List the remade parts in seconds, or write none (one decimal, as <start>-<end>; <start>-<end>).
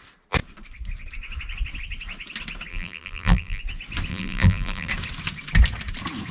2.7-3.6; 4.1-4.9